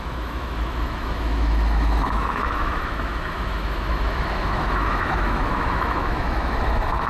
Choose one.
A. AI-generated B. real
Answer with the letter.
A